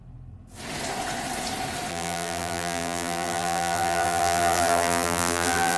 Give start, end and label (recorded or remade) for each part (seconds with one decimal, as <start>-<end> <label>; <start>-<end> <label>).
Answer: 0.0-1.9 recorded; 1.9-5.8 remade